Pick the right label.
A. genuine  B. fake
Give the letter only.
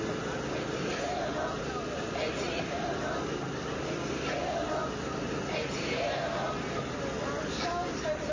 A